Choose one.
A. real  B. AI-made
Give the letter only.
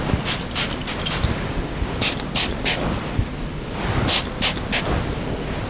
A